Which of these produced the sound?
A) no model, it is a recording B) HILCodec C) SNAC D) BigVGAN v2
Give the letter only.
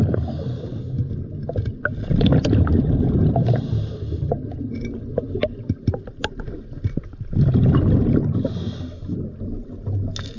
A